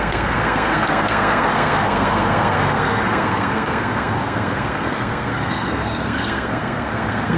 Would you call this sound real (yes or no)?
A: no